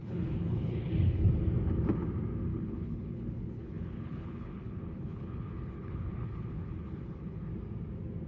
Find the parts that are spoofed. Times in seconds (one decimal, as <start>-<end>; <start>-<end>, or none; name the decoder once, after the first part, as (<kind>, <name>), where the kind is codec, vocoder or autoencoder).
0.0-0.9 (codec, HILCodec); 2.5-7.5